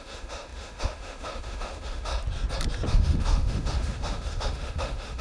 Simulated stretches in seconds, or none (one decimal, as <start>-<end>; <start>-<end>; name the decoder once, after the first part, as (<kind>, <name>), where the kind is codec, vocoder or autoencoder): 0.0-2.1 (autoencoder, DAC-VAE); 2.9-5.2